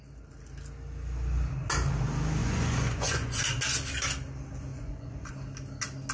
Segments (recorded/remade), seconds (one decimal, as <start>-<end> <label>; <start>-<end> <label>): 0.0-2.4 recorded; 2.4-3.4 remade; 3.4-4.7 recorded; 4.7-5.3 remade; 5.3-6.1 recorded

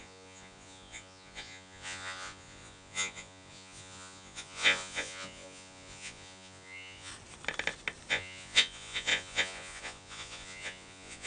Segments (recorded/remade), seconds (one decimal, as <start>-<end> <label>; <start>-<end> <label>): 0.0-7.1 remade; 7.1-8.1 recorded; 8.1-11.3 remade